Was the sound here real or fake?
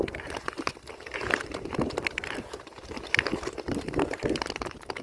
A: fake